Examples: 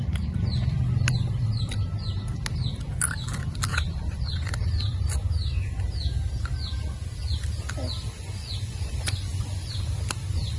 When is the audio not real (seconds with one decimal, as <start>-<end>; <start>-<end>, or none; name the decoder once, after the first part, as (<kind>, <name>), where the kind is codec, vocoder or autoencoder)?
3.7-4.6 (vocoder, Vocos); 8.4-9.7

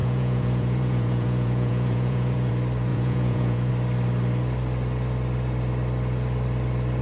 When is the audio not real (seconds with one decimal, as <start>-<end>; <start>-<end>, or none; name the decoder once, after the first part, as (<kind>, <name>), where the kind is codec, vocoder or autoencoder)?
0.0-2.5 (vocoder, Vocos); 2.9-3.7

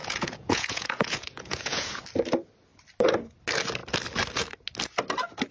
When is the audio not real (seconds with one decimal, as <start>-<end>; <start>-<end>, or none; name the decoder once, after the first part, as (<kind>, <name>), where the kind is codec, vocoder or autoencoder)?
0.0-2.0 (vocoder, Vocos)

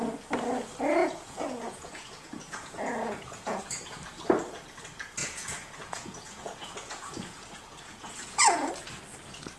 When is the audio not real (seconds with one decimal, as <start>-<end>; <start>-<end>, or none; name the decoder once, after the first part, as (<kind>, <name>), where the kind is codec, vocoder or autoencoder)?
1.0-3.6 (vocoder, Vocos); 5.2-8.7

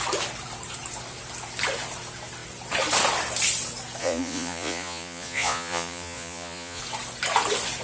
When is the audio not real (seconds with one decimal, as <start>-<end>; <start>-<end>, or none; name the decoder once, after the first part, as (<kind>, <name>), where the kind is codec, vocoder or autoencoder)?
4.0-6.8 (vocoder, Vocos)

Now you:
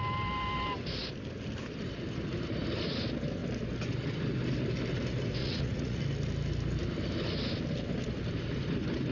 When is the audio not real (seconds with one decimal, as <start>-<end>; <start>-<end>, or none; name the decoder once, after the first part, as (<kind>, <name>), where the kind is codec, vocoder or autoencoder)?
5.4-6.0 (vocoder, Vocos)

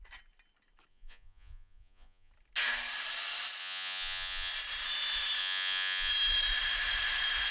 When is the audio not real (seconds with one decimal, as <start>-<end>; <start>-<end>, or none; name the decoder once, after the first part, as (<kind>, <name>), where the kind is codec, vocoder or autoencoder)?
0.9-2.3 (vocoder, Vocos); 3.6-4.5; 5.4-6.1

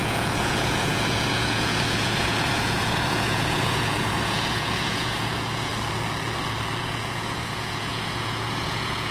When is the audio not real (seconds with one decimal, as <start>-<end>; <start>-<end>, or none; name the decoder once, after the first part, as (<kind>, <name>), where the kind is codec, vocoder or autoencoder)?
0.0-5.7 (vocoder, Vocos); 6.8-9.1